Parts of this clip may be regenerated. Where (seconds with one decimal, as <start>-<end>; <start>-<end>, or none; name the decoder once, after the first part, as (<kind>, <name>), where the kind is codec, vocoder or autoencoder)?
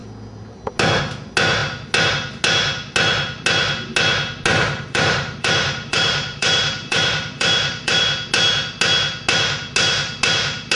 4.5-8.0 (vocoder, BigVGAN v2)